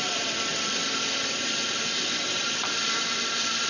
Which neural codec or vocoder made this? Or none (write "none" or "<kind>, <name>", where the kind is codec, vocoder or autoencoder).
vocoder, BigVGAN v2